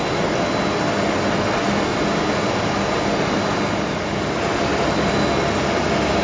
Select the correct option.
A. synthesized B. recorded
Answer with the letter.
B